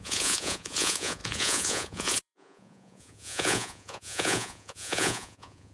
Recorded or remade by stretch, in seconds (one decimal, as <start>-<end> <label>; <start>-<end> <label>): 0.0-5.7 remade